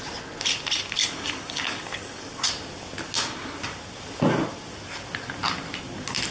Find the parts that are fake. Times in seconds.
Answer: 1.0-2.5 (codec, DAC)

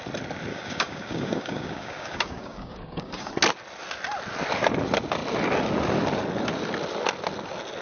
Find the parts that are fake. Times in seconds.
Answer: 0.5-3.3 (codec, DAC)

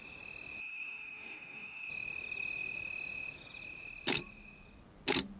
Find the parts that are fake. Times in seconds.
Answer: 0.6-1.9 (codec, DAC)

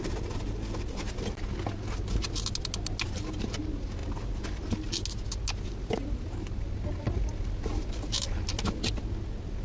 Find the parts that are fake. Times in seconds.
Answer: none

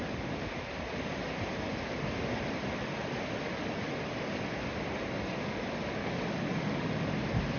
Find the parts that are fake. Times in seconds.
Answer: 6.0-6.9 (codec, DAC)

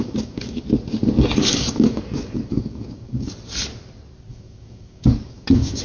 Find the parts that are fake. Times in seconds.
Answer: 0.0-0.6 (codec, DAC); 1.4-3.3; 4.3-5.8

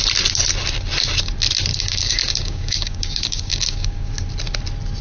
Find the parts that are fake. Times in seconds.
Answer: 1.7-4.1 (codec, DAC)